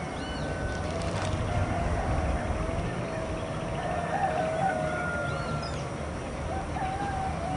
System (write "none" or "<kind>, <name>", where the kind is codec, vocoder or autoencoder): none